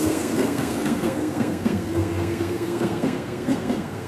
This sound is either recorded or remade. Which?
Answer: remade